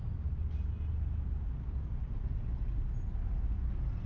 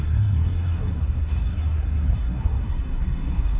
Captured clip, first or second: first